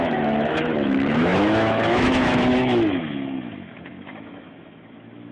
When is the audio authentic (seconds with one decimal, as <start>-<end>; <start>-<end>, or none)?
none